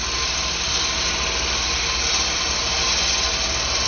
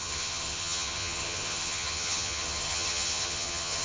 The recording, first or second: first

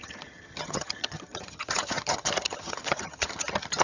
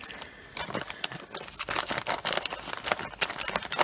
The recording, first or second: second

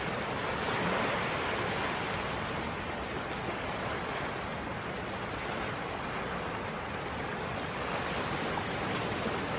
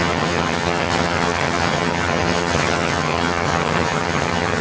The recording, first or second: first